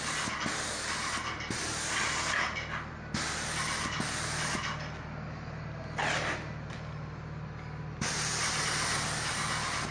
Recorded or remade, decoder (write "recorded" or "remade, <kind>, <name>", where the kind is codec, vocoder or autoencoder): recorded